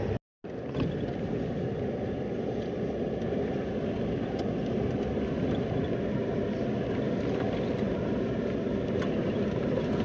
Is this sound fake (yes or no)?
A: no